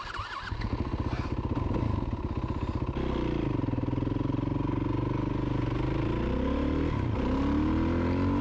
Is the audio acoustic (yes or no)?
yes